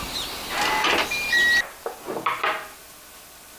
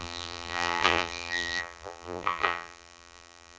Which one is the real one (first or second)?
first